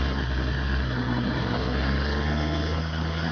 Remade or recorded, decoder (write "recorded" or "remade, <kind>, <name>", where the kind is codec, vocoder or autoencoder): remade, codec, SNAC